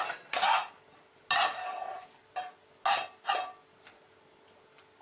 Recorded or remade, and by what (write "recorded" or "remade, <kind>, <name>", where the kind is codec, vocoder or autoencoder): recorded